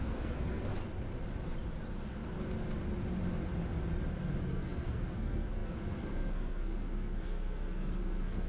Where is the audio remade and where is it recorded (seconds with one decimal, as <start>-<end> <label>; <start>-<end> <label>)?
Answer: 0.0-0.7 remade; 0.7-4.4 recorded; 4.4-8.5 remade